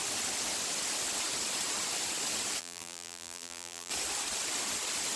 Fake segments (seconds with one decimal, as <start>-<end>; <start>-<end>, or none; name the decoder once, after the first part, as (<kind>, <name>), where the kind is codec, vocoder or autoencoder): 2.6-3.9 (vocoder, BigVGAN v2)